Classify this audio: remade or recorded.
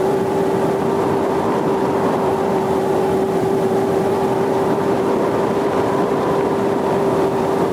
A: remade